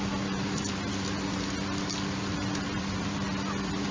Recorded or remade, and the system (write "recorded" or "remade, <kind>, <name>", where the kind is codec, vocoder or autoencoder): recorded